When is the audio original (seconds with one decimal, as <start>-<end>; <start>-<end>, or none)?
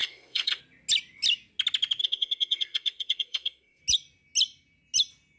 0.6-2.0; 3.8-5.4